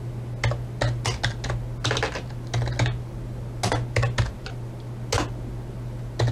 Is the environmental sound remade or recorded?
recorded